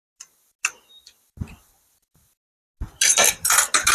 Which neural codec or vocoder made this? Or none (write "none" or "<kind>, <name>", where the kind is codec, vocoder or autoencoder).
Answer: none